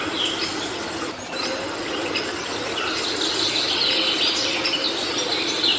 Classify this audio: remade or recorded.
recorded